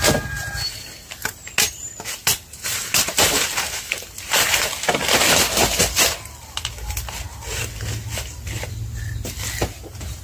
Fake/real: real